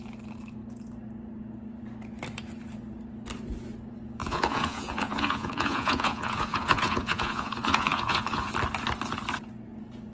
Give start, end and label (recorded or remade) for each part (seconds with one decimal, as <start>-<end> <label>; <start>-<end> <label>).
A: 0.0-4.2 recorded; 4.2-8.5 remade; 8.5-10.1 recorded